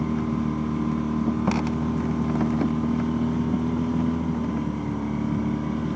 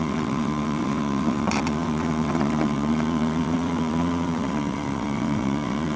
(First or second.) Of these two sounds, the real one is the first